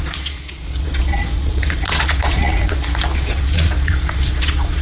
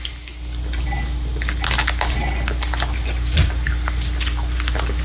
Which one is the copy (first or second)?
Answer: first